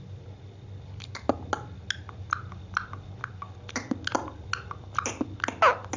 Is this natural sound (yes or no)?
yes